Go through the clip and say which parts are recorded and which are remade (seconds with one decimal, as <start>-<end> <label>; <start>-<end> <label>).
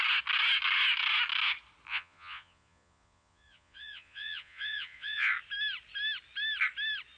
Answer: 0.0-1.9 recorded; 1.9-5.3 remade; 5.3-7.2 recorded